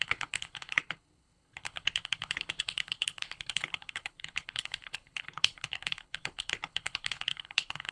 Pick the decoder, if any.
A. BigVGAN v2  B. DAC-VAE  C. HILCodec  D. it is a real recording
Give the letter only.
C